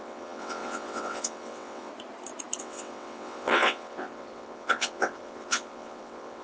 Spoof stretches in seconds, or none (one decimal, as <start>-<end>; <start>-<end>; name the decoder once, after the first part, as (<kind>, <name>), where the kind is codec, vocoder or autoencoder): 0.0-1.9 (vocoder, WaveNeXt); 2.6-6.4